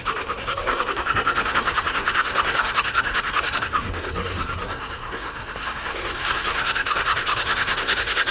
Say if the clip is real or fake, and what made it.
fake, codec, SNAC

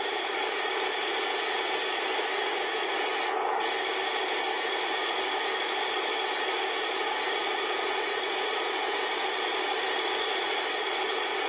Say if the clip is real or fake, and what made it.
real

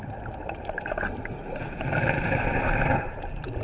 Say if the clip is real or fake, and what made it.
real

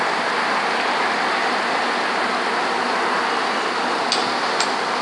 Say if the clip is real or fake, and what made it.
real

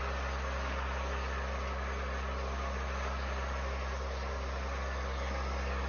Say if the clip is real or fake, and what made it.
real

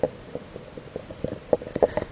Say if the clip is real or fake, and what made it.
real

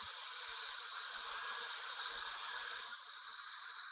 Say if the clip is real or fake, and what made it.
real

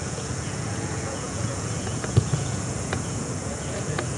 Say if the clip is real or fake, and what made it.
fake, vocoder, Vocos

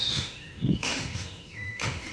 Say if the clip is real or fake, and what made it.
fake, autoencoder, DAC-VAE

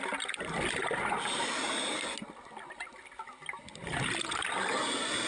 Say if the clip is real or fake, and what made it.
real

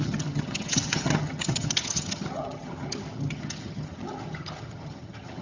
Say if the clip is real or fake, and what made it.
fake, vocoder, HiFi-GAN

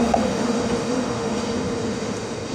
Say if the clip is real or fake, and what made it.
fake, autoencoder, DAC-VAE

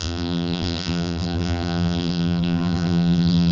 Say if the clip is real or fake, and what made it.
fake, vocoder, BigVGAN v2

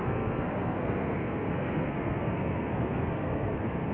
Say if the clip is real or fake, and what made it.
fake, codec, SNAC